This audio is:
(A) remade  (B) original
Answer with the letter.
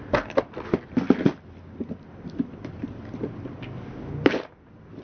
B